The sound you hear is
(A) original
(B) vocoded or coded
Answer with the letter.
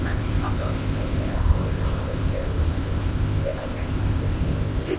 B